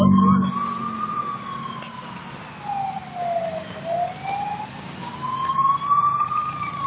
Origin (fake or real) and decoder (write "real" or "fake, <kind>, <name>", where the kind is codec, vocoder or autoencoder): real